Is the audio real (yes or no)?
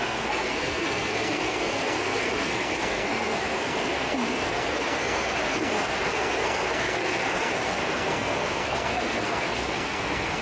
no